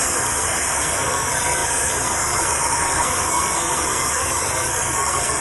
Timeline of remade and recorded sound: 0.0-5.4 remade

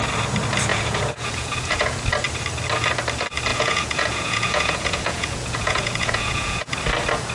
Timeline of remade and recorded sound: 0.0-0.7 recorded; 0.7-2.0 remade; 2.0-3.5 recorded; 3.5-6.8 remade; 6.8-7.3 recorded

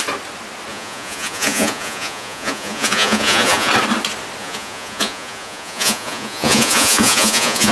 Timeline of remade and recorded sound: 0.0-0.7 recorded; 0.7-3.7 remade; 3.7-4.4 recorded; 4.4-7.7 remade

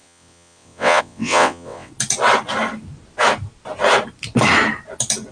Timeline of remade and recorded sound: 0.0-1.9 remade; 1.9-5.3 recorded

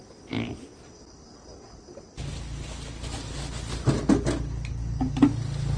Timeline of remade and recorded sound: 0.0-5.8 recorded